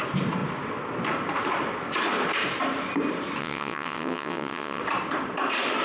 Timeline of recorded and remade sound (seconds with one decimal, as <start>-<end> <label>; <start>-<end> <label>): 0.0-3.4 recorded; 3.4-4.8 remade; 4.8-5.8 recorded